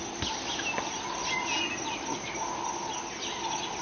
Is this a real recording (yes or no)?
yes